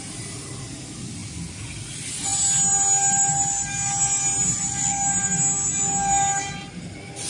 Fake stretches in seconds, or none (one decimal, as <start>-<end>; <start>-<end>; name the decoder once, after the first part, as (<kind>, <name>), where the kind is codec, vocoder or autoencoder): none